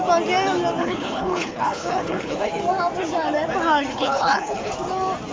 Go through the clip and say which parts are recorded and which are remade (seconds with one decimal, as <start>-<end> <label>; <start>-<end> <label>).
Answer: 0.0-0.8 recorded; 0.8-2.5 remade; 2.5-3.9 recorded; 3.9-4.7 remade; 4.7-5.3 recorded